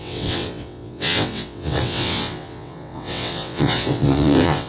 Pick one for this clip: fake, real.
fake